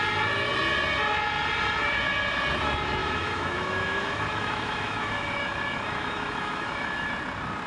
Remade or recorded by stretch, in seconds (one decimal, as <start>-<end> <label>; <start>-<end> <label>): 0.0-3.0 recorded; 3.0-7.1 remade; 7.1-7.7 recorded